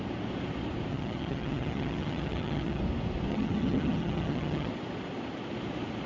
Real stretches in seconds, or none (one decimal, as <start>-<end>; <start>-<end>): 0.0-0.9; 2.8-3.3; 4.7-6.1